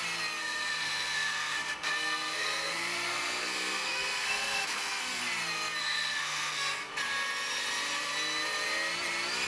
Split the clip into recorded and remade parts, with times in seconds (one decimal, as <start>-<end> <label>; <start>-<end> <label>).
0.0-0.4 recorded; 0.4-5.2 remade; 5.2-5.8 recorded; 5.8-6.9 remade; 6.9-9.5 recorded